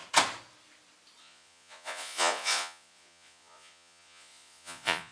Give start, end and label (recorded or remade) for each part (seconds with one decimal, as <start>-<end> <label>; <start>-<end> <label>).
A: 0.0-1.2 recorded; 1.2-5.1 remade